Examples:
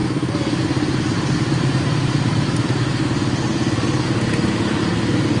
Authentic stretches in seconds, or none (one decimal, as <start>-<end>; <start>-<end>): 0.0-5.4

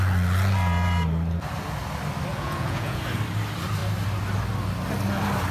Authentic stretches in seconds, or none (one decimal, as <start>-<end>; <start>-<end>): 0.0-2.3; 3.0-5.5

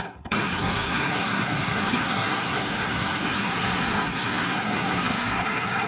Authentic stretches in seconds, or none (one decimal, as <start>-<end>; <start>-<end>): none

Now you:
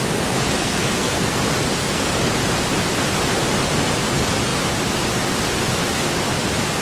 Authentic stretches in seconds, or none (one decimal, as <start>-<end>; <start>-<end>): 0.0-0.6; 1.4-1.8; 2.3-6.8

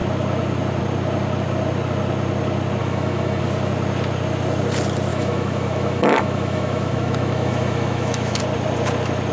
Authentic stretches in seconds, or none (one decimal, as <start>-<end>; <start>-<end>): 0.0-2.8; 3.4-5.1; 8.4-9.3

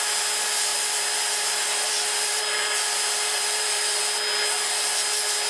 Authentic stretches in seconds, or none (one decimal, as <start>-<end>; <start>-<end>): 0.0-0.7; 4.0-5.5